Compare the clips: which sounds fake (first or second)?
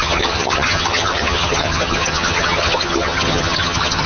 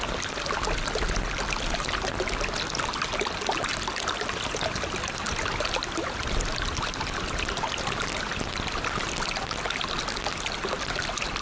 first